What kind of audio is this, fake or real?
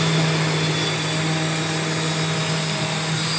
real